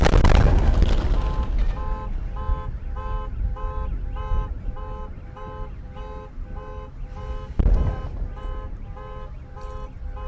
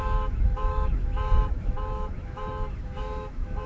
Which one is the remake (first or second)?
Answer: second